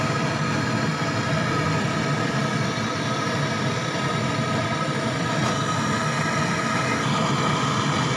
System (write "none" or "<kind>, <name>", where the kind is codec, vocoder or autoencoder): vocoder, BigVGAN v2